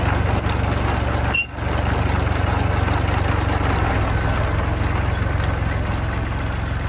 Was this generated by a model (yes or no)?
no